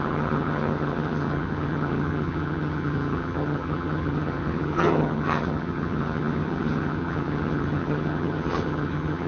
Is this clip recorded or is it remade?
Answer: remade